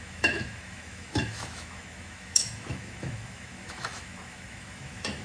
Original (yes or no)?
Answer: no